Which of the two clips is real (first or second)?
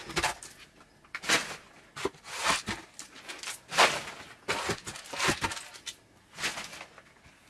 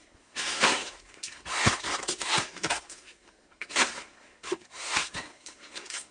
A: first